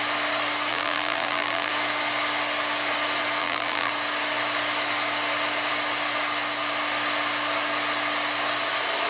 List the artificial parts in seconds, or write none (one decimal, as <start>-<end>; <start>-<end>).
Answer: 0.7-1.7; 3.4-3.9